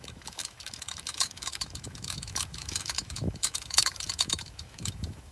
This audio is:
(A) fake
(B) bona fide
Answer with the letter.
A